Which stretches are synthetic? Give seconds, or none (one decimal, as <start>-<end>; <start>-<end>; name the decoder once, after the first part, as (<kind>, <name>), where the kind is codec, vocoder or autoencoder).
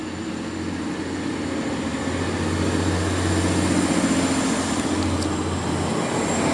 none